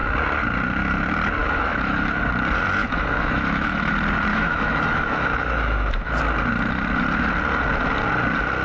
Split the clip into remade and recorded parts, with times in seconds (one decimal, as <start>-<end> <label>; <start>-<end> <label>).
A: 0.0-1.4 recorded; 1.4-2.2 remade; 2.2-2.8 recorded; 2.8-3.9 remade; 3.9-4.3 recorded; 4.3-6.1 remade; 6.1-8.6 recorded